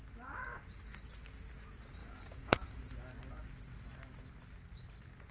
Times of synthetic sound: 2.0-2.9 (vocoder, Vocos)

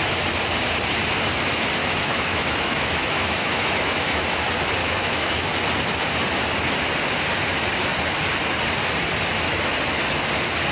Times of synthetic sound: 1.8-4.2 (autoencoder, DAC-VAE); 4.8-5.5

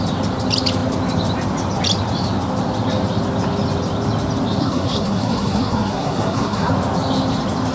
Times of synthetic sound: 4.6-6.7 (codec, SNAC)

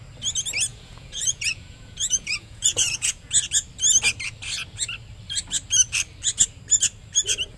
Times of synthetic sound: 0.7-3.3 (vocoder, Vocos)

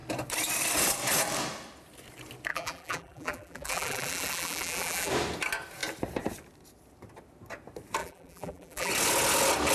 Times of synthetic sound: 2.5-5.1 (vocoder, BigVGAN v2); 8.0-8.9

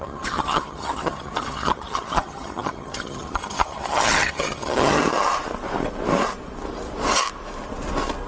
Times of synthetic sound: 0.0-5.0 (vocoder, HiFi-GAN)